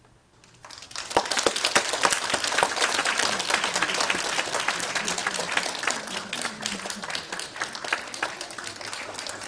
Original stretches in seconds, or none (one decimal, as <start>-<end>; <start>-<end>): 0.0-5.2; 6.4-9.5